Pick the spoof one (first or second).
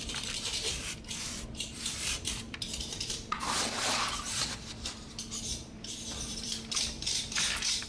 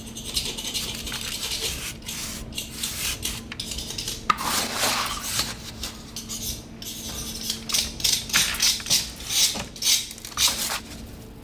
first